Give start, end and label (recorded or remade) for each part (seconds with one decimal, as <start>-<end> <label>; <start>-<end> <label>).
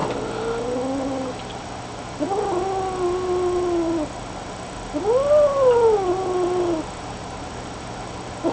0.0-8.5 recorded